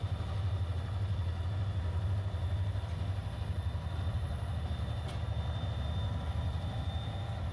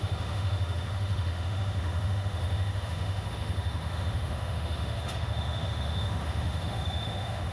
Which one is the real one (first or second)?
first